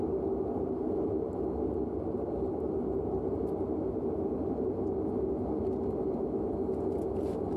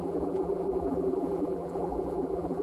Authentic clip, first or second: first